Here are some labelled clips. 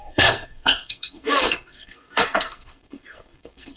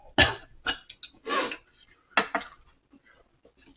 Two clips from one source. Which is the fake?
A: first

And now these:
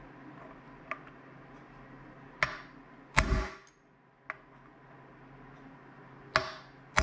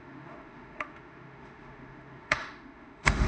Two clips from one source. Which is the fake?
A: second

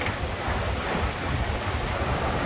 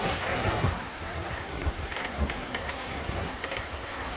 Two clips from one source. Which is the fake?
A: second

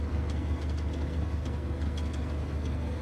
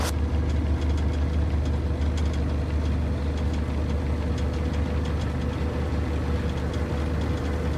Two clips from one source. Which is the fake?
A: first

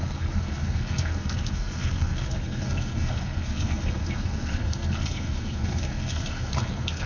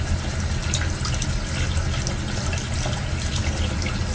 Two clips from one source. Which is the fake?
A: first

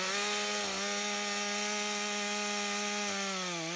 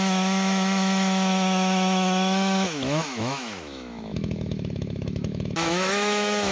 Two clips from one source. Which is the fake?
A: second